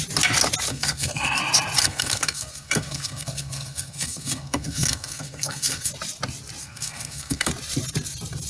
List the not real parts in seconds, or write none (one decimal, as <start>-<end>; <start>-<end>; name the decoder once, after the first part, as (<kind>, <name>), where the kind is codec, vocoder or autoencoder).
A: 0.7-1.4 (codec, SNAC); 1.8-5.9; 6.6-7.5